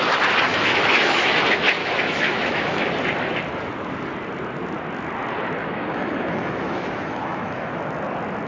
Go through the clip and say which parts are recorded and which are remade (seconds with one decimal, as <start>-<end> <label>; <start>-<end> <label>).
0.0-0.5 recorded; 0.5-1.4 remade; 1.4-1.8 recorded; 1.8-2.9 remade; 2.9-5.6 recorded; 5.6-7.8 remade; 7.8-8.5 recorded